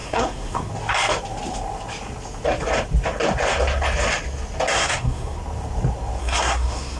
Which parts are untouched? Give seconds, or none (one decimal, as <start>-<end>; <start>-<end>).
0.7-4.7; 5.4-6.2